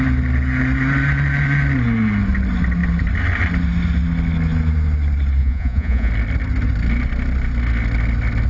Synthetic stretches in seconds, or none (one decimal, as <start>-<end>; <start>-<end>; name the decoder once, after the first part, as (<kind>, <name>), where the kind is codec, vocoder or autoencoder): 5.4-6.1 (vocoder, Vocos)